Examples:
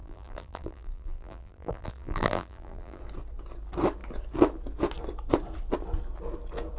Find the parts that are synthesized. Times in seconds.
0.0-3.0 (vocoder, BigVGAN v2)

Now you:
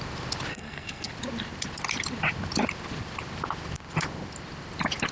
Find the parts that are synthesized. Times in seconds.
0.5-1.1 (codec, SNAC)

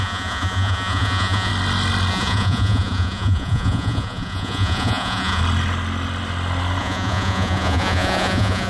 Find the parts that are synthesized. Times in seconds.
0.0-1.5 (vocoder, Vocos); 2.1-5.4; 6.8-8.7

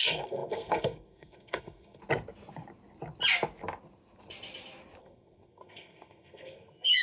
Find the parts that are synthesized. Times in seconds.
0.0-2.0 (codec, SNAC); 5.0-7.0

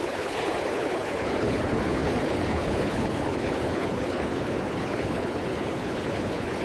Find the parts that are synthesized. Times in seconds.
0.0-6.6 (codec, HILCodec)

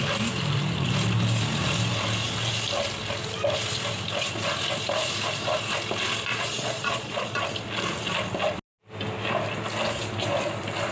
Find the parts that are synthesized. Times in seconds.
6.3-7.4 (vocoder, Vocos)